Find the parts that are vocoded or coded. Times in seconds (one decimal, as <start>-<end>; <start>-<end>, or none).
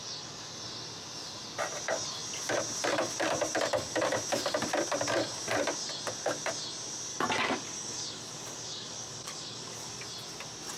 0.0-0.6; 7.1-10.0